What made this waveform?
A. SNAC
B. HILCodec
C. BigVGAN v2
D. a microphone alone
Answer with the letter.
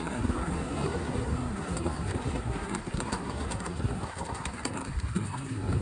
A